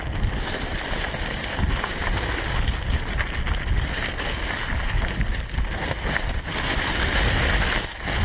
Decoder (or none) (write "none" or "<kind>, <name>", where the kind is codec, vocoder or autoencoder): none